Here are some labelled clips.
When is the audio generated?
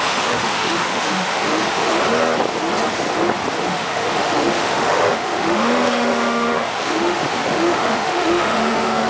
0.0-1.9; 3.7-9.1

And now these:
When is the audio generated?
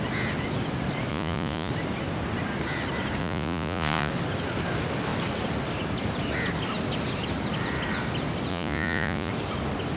1.1-1.7; 3.2-4.1; 8.5-9.3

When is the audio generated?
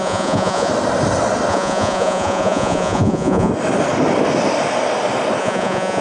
0.0-0.7; 1.5-3.5; 5.4-6.0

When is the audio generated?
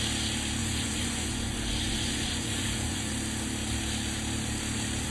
0.6-3.1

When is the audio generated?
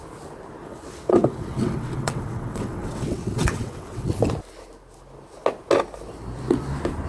0.6-4.1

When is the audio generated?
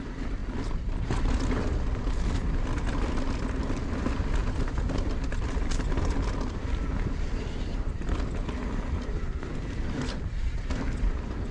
0.4-1.4; 2.4-3.1; 4.4-8.0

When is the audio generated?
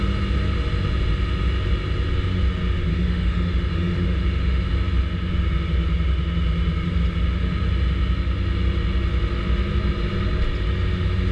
2.9-4.7